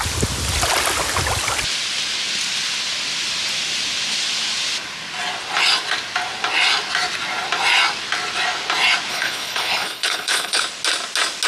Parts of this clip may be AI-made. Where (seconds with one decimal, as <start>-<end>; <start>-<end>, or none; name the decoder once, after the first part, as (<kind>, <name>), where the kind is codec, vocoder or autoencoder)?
9.1-10.6 (codec, HILCodec)